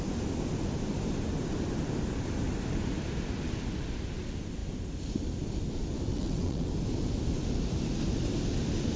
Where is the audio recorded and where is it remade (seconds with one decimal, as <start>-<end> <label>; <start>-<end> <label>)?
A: 0.0-6.1 recorded; 6.1-6.7 remade; 6.7-9.0 recorded